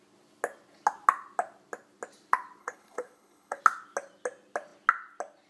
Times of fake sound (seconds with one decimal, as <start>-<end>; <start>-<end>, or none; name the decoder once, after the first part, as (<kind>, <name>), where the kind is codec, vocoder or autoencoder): 2.6-3.6 (codec, HILCodec)